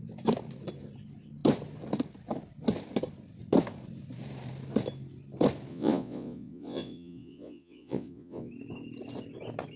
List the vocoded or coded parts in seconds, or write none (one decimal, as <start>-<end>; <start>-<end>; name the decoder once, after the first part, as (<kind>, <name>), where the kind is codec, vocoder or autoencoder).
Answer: 5.7-8.5 (vocoder, Vocos)